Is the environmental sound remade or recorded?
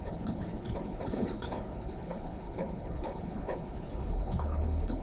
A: remade